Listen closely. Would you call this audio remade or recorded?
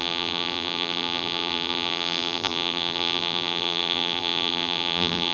remade